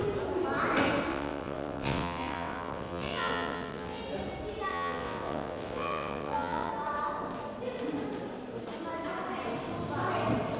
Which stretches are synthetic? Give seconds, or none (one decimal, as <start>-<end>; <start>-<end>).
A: 1.1-4.0; 4.7-6.7